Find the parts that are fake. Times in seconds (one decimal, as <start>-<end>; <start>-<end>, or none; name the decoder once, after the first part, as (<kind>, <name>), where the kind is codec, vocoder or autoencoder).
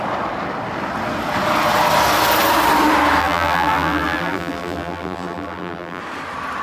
3.2-6.0 (vocoder, BigVGAN v2)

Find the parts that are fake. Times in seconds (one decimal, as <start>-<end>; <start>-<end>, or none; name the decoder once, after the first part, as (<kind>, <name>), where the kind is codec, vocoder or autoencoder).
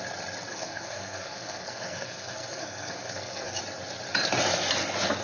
0.5-3.6 (codec, SNAC)